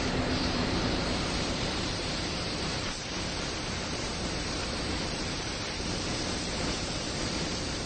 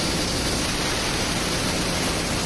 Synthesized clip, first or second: first